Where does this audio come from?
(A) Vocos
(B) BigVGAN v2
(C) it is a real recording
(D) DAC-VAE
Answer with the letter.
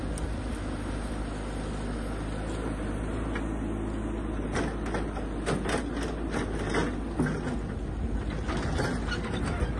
C